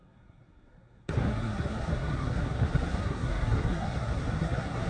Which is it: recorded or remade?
remade